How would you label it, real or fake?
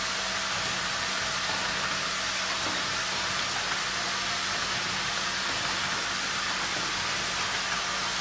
real